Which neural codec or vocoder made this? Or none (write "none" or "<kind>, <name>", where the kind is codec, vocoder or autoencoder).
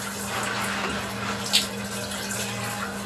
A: none